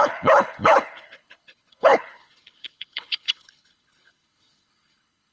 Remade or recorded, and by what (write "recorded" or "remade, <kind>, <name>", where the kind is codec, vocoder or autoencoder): remade, codec, HILCodec